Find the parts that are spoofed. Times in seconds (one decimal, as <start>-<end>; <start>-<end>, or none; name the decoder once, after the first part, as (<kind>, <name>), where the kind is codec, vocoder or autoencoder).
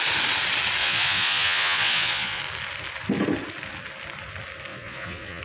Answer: 0.8-2.4 (vocoder, Vocos); 4.7-5.4